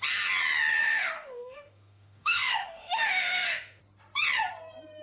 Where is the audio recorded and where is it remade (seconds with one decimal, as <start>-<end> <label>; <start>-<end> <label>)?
0.0-0.8 recorded; 0.8-3.8 remade; 3.8-5.0 recorded

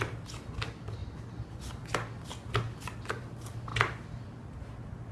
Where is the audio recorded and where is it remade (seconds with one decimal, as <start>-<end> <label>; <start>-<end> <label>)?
0.0-5.1 recorded